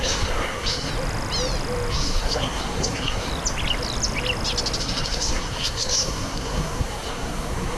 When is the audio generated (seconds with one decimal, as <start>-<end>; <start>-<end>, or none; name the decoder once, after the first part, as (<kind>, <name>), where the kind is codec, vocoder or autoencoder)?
0.0-0.9 (codec, SNAC); 1.9-3.3; 4.8-7.8